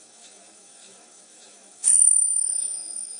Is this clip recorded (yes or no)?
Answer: no